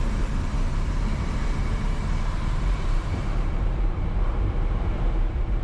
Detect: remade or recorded remade